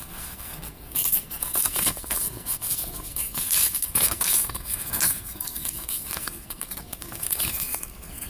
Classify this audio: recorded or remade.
remade